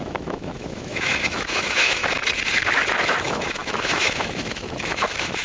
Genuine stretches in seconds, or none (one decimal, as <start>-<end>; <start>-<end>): 2.0-3.0